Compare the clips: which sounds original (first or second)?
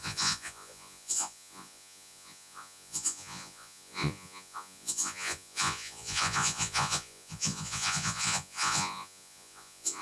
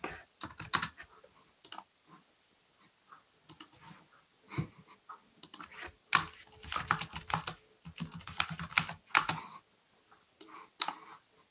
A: second